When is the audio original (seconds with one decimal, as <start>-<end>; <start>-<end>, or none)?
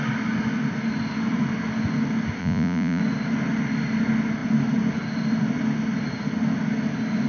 0.0-2.4; 3.0-7.3